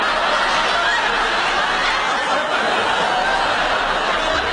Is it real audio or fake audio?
real